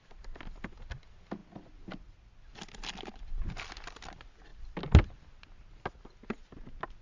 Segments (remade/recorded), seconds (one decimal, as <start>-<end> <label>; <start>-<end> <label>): 0.0-7.0 recorded